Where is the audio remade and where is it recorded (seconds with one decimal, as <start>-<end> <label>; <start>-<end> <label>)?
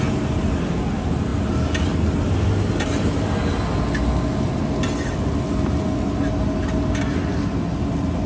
0.0-8.3 recorded